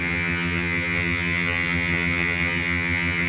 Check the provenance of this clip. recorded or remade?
remade